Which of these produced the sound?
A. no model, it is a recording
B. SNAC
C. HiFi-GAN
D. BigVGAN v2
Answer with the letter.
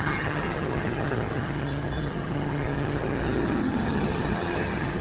C